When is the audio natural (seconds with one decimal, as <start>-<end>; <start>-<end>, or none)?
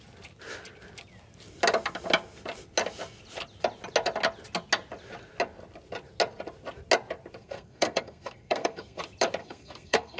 0.0-7.4; 9.0-9.4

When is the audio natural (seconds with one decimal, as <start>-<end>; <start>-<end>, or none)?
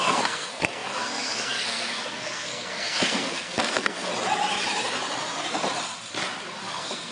4.1-6.6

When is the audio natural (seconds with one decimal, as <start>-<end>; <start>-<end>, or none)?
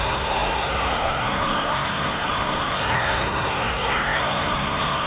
none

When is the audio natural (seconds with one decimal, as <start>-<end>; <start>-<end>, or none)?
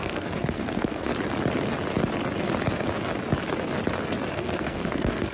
1.1-4.3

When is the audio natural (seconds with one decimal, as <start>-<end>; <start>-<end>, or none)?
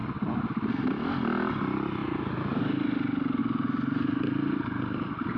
0.0-5.4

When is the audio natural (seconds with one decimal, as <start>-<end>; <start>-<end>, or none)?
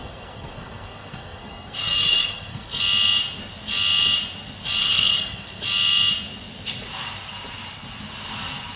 2.8-4.8; 5.6-8.8